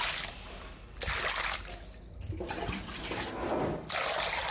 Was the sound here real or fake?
real